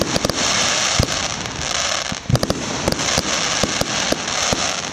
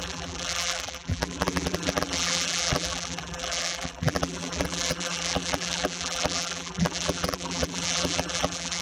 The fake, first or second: second